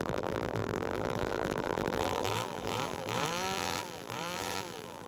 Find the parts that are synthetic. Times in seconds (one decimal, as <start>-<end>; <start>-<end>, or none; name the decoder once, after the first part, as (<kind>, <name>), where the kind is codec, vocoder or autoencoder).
0.0-5.1 (vocoder, BigVGAN v2)